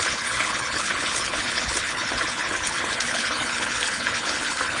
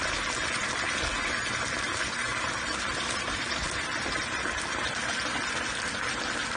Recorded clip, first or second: second